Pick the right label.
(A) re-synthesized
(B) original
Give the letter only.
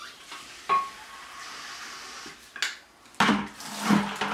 B